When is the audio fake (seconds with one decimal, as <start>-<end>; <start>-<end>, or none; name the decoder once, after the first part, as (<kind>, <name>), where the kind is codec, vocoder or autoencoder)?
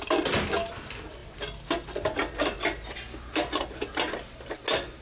none